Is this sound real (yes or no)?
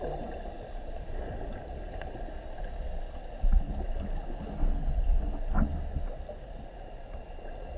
yes